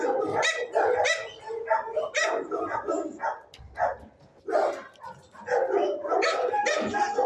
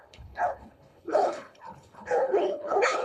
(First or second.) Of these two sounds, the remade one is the second